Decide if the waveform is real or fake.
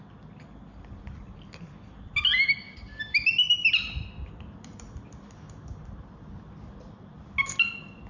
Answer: real